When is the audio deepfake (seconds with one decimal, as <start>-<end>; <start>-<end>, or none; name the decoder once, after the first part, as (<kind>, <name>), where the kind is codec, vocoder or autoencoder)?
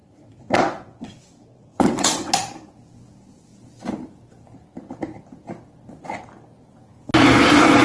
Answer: 0.0-2.3 (vocoder, WaveNeXt)